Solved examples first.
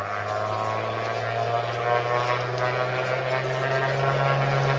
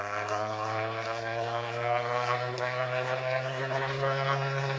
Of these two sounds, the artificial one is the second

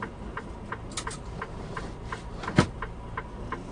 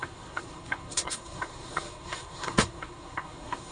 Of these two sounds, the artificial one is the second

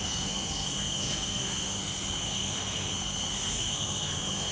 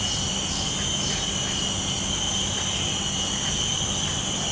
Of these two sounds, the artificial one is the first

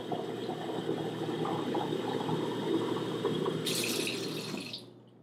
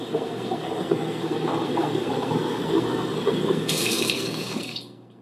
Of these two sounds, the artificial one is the second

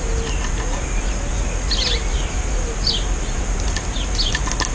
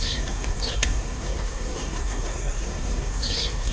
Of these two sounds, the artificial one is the second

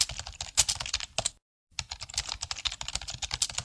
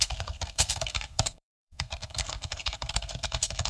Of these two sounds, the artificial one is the second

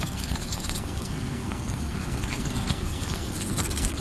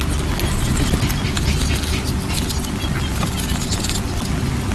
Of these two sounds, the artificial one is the first